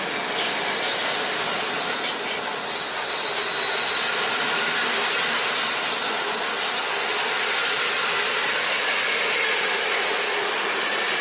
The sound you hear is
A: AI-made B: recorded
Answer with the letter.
B